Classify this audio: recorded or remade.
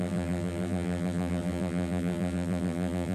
remade